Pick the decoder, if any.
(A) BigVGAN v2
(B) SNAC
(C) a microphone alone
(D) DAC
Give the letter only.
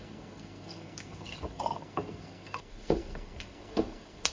B